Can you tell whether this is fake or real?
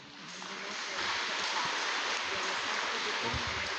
real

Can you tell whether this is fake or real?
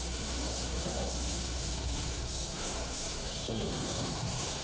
fake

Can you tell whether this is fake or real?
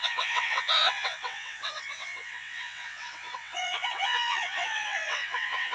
fake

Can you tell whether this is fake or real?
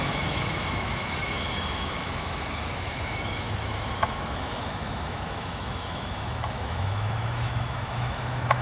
fake